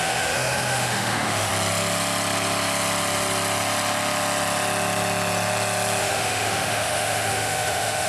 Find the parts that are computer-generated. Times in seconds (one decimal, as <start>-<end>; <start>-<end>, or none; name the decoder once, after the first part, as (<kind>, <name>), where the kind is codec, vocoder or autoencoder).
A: 0.0-1.5 (autoencoder, DAC-VAE); 6.0-8.1